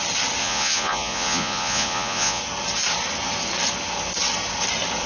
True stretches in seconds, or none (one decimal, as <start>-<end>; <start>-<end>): 0.0-0.4; 2.4-5.1